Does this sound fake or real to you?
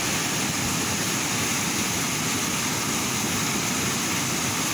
real